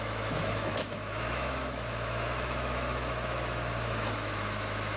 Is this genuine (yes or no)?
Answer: no